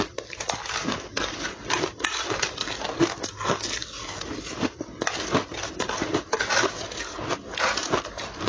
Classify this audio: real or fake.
real